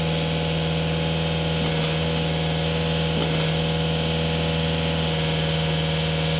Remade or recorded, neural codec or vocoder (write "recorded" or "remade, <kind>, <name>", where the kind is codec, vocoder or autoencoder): recorded